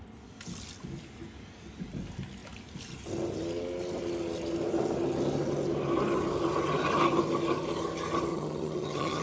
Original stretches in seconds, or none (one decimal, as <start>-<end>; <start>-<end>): 0.0-8.3